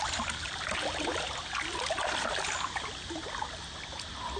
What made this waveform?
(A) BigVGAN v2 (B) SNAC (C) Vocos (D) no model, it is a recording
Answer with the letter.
D